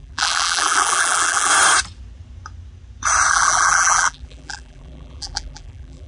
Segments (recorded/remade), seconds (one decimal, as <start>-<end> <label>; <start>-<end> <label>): 0.0-1.5 remade; 1.5-3.3 recorded; 3.3-6.1 remade